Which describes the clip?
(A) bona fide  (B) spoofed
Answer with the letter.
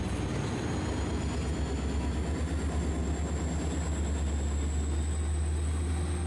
A